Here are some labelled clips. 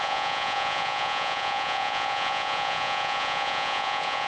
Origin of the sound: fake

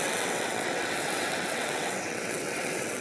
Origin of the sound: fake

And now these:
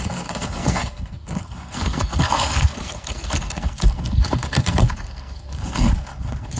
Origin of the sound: fake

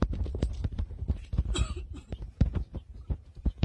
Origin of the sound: fake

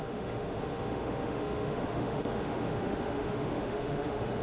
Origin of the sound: fake